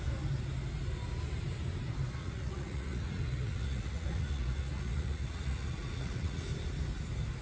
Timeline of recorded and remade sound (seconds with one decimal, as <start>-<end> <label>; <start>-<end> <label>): 0.0-2.2 recorded; 2.2-6.4 remade; 6.4-7.4 recorded

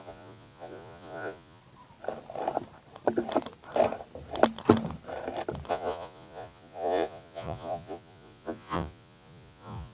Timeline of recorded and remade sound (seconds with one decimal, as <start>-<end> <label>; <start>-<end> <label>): 0.0-1.6 remade; 1.6-5.7 recorded; 5.7-9.9 remade

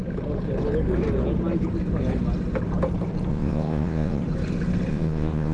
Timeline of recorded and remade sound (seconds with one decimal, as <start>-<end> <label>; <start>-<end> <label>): 0.0-3.3 recorded; 3.3-4.2 remade; 4.2-4.9 recorded; 4.9-5.5 remade

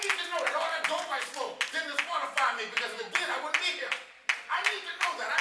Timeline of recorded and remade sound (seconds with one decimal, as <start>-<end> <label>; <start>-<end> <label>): 0.0-5.4 recorded

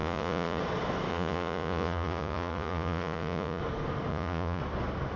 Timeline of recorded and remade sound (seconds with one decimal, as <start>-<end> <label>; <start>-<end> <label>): 0.0-0.6 remade; 0.6-1.1 recorded; 1.1-3.6 remade; 3.6-4.1 recorded; 4.1-4.6 remade; 4.6-5.2 recorded

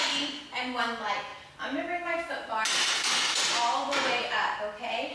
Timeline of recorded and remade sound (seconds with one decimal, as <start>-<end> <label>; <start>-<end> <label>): 0.0-5.1 recorded

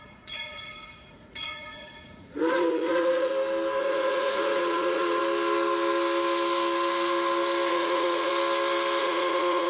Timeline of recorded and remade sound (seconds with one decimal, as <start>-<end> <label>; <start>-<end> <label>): 0.0-3.3 remade; 3.3-3.8 recorded; 3.8-5.2 remade; 5.2-7.7 recorded; 7.7-8.3 remade; 8.3-9.0 recorded; 9.0-9.7 remade

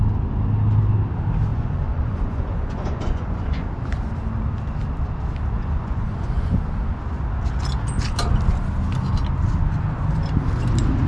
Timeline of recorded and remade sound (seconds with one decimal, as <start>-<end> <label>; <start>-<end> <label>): 0.0-1.5 recorded; 1.5-3.7 remade; 3.7-5.6 recorded; 5.6-6.6 remade; 6.6-11.1 recorded